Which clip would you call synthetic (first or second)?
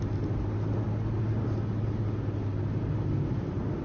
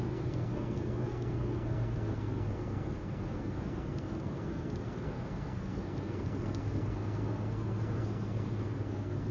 second